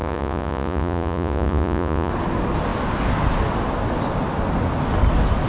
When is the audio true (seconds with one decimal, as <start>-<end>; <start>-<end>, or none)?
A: 2.1-5.5